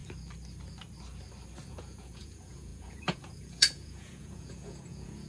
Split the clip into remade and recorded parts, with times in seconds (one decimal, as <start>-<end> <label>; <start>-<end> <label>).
0.0-1.7 recorded; 1.7-5.3 remade